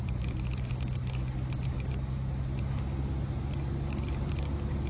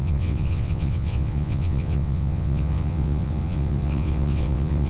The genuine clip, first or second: first